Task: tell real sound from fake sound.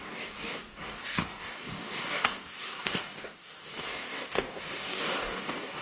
fake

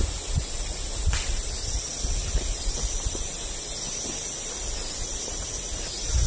real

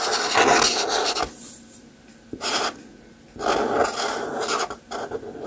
real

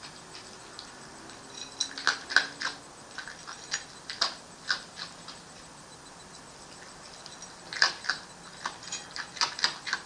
real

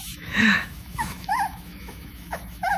fake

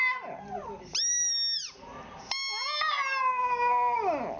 real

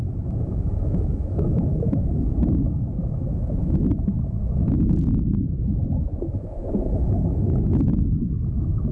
fake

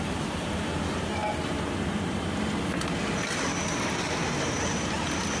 real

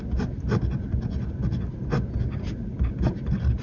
real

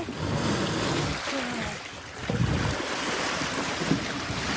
real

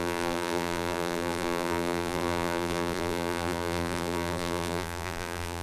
fake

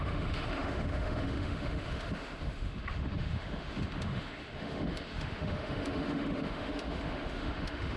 fake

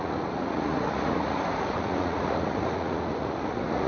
fake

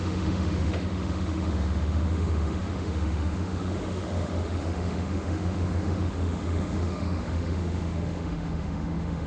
fake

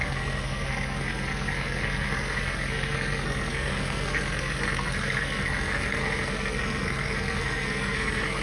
fake